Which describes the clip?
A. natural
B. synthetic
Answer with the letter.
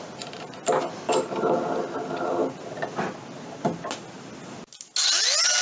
A